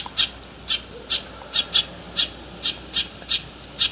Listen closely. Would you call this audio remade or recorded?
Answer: recorded